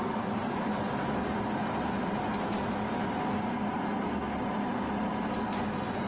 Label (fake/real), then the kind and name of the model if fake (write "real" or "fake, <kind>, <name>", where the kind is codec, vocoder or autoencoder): real